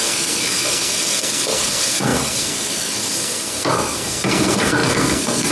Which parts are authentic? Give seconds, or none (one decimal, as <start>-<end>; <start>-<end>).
none